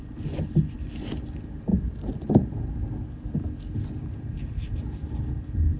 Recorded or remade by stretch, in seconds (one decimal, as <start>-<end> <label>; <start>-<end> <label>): 0.0-5.8 recorded